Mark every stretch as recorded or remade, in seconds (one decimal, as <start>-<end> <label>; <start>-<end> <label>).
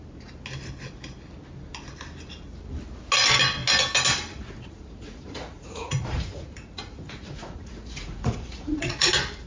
0.0-4.3 recorded; 4.3-9.1 remade; 9.1-9.5 recorded